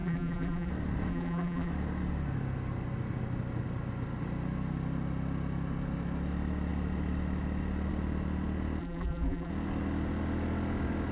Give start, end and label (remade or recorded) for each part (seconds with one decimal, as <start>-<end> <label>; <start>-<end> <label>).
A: 0.0-0.7 remade; 0.7-1.1 recorded; 1.1-1.7 remade; 1.7-8.8 recorded; 8.8-9.5 remade; 9.5-11.1 recorded